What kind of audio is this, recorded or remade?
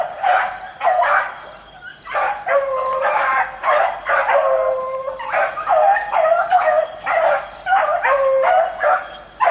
recorded